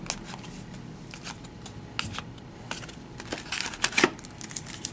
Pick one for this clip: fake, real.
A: real